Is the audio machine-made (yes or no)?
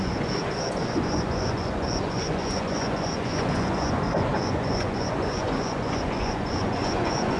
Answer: yes